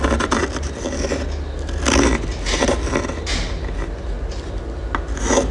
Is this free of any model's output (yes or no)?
yes